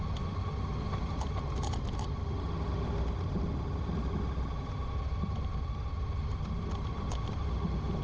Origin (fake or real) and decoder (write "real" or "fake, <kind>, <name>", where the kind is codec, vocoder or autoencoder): real